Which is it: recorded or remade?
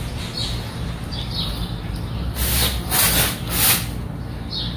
recorded